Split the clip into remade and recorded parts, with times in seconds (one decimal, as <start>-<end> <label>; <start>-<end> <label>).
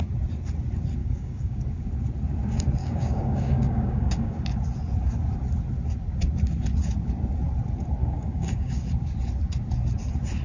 0.0-1.0 recorded; 1.0-1.6 remade; 1.6-2.8 recorded; 2.8-4.4 remade; 4.4-8.0 recorded; 8.0-8.8 remade; 8.8-10.4 recorded